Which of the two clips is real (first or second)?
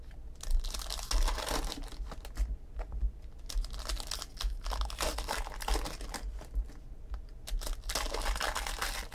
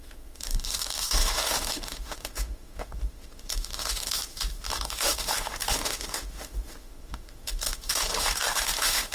first